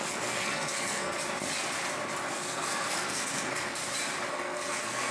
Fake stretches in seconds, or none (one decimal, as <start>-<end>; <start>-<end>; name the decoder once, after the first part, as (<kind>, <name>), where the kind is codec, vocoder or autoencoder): 0.0-1.2 (codec, SNAC); 2.3-3.8; 4.3-5.1